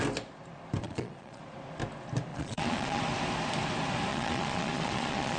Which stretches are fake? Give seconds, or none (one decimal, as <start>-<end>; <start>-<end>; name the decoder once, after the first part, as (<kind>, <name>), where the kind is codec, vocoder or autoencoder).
0.8-1.4 (vocoder, Vocos); 2.3-3.0; 4.1-5.4